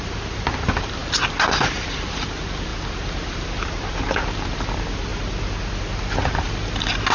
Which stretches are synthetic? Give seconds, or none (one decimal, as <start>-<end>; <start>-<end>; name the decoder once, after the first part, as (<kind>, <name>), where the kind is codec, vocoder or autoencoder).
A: none